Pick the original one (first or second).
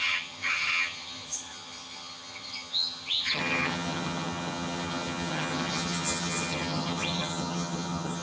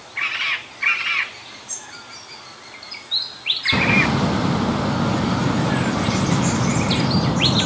second